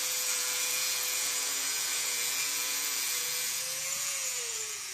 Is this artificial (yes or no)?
yes